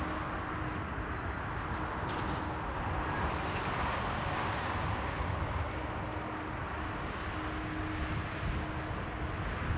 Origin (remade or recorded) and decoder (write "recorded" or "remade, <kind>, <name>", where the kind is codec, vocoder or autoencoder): recorded